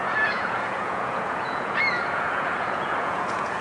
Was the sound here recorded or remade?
remade